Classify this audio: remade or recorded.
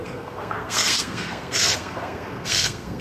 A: remade